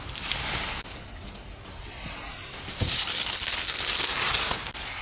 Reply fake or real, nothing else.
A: real